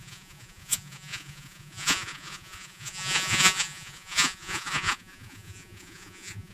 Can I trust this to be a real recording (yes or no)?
no